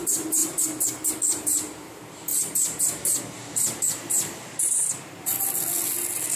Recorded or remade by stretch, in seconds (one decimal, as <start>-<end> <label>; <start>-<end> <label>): 0.0-5.3 remade; 5.3-6.4 recorded